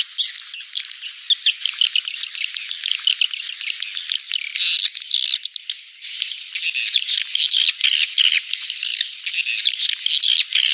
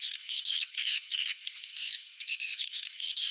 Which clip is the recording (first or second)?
first